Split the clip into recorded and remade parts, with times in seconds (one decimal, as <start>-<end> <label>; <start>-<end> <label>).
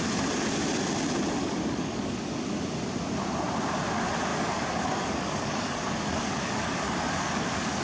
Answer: 0.0-1.4 recorded; 1.4-2.3 remade; 2.3-4.3 recorded; 4.3-7.8 remade